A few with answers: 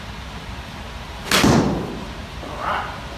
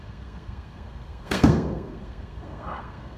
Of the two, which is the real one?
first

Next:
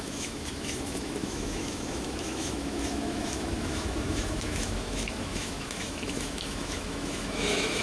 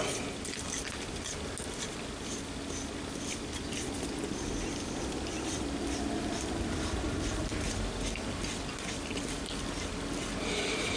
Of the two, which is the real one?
second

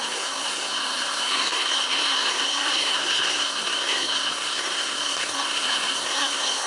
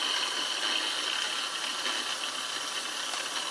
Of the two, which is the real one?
second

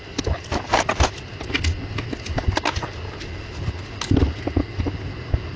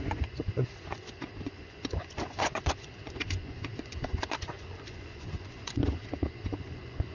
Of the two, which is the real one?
first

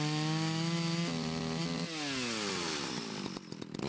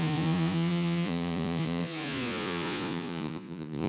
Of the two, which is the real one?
first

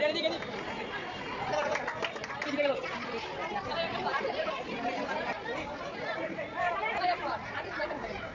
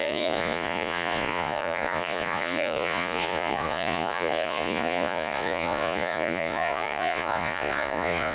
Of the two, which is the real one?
first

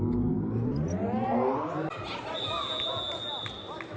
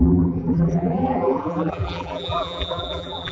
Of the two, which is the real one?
first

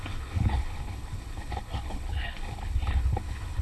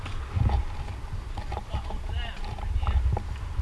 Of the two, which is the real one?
second